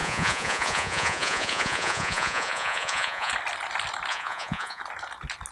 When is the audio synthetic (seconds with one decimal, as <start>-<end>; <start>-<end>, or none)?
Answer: 0.0-3.3; 4.1-4.8

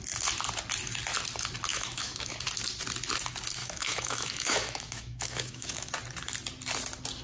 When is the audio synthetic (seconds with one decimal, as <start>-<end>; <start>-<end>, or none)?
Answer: 1.7-2.3; 3.6-5.9

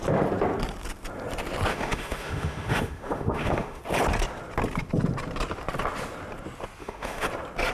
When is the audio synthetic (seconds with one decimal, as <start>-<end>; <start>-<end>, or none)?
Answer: 1.7-3.8; 6.8-7.3

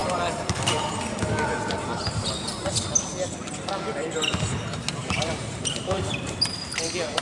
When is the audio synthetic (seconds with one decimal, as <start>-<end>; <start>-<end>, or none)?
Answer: 5.0-6.3

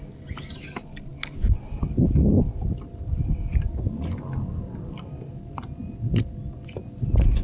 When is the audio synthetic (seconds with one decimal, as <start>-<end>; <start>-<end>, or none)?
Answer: none

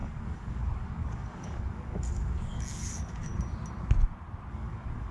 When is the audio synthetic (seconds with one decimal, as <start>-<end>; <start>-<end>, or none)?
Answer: 0.0-3.3; 4.5-5.1

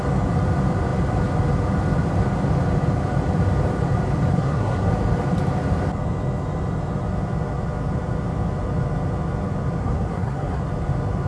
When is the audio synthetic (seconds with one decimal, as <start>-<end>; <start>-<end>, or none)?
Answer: 4.3-4.9; 9.8-10.6